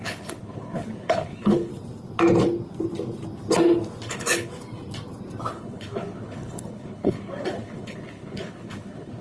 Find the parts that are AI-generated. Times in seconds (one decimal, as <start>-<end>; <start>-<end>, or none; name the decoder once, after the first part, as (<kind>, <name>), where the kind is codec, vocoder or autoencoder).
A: 0.0-1.7 (codec, HILCodec); 4.1-4.5; 5.5-9.2